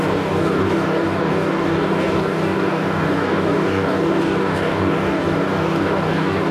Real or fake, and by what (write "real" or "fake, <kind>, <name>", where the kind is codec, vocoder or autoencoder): fake, codec, DAC